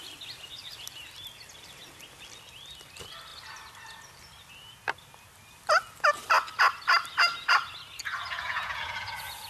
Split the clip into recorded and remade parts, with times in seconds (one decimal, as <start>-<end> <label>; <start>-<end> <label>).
0.0-8.0 recorded; 8.0-9.5 remade

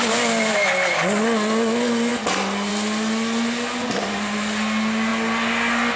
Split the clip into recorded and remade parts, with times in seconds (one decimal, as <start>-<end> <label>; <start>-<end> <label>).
0.0-6.0 recorded

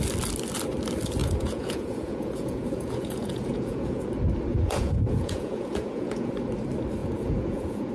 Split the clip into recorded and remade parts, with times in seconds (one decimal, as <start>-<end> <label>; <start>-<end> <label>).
0.0-1.2 recorded; 1.2-4.1 remade; 4.1-4.5 recorded; 4.5-6.3 remade; 6.3-7.0 recorded; 7.0-7.9 remade

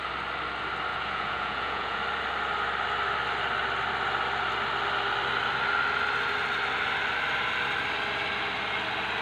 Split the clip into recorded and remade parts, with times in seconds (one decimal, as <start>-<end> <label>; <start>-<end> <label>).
0.0-0.9 recorded; 0.9-2.0 remade; 2.0-9.2 recorded